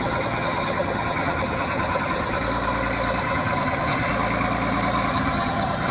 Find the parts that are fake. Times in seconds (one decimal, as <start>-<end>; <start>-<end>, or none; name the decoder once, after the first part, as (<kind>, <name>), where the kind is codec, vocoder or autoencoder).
0.0-2.4 (vocoder, HiFi-GAN); 3.2-4.1; 5.1-5.9